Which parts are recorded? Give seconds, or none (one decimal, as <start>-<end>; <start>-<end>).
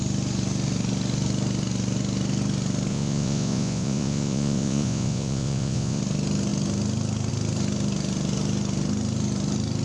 0.0-2.9; 6.0-9.8